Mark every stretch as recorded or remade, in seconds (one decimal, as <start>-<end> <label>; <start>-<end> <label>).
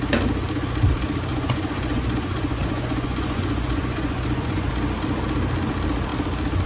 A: 0.0-1.3 recorded; 1.3-4.7 remade; 4.7-6.7 recorded